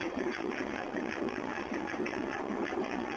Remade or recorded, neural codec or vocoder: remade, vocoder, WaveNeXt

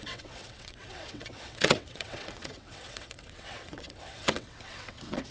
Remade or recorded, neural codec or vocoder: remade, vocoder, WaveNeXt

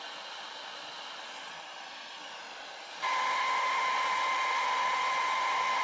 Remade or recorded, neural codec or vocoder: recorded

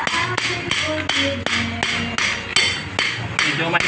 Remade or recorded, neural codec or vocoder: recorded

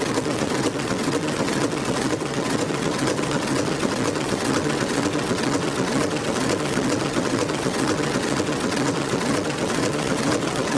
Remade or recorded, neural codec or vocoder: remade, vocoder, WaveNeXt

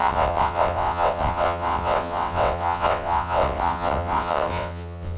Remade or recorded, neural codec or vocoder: remade, vocoder, WaveNeXt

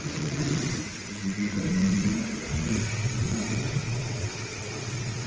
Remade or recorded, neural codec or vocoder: remade, vocoder, WaveNeXt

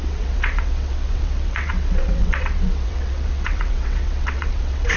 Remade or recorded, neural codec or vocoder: remade, vocoder, WaveNeXt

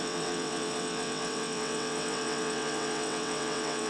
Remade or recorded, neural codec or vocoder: remade, vocoder, WaveNeXt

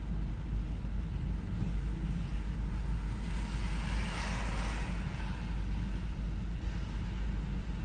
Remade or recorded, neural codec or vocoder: recorded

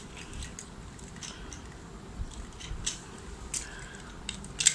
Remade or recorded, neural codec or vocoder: recorded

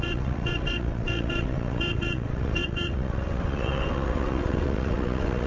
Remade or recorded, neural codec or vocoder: remade, vocoder, WaveNeXt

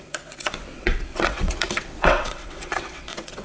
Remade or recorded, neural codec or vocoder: remade, vocoder, WaveNeXt